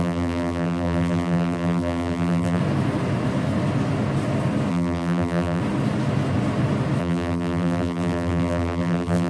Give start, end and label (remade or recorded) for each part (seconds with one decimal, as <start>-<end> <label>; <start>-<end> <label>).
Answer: 0.0-2.6 remade; 2.6-4.7 recorded; 4.7-5.6 remade; 5.6-7.0 recorded; 7.0-9.3 remade